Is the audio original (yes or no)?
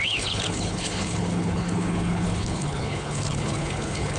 no